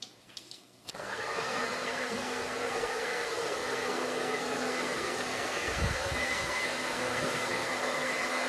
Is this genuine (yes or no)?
no